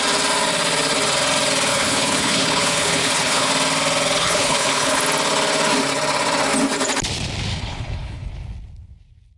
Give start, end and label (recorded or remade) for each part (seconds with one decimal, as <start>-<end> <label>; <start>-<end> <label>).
0.0-1.7 recorded; 1.7-3.5 remade; 3.5-4.2 recorded; 4.2-5.0 remade; 5.0-7.5 recorded; 7.5-8.3 remade; 8.3-9.4 recorded